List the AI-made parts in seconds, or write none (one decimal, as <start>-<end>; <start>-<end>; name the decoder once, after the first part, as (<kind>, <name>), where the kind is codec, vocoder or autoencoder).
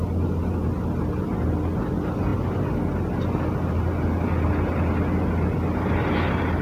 none